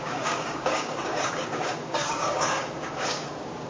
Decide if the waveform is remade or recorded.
remade